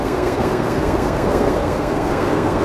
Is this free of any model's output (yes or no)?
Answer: no